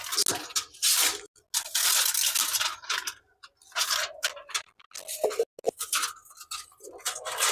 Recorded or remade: recorded